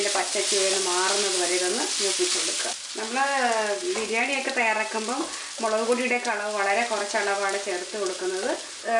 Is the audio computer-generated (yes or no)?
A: no